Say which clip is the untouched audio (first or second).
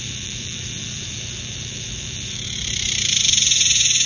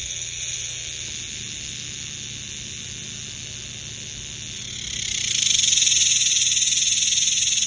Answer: second